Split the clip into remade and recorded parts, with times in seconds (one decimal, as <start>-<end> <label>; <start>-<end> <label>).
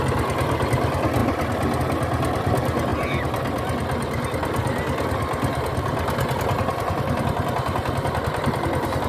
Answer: 0.0-9.1 recorded